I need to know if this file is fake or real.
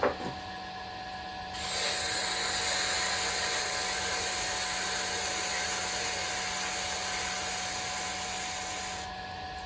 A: real